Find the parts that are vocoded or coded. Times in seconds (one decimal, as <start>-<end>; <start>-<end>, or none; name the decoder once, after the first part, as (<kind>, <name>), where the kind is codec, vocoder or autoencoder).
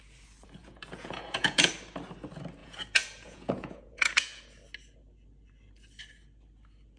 0.6-1.7 (vocoder, Vocos); 2.6-4.4